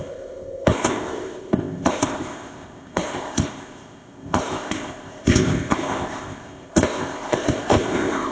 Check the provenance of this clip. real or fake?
fake